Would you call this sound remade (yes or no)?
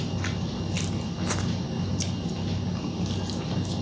no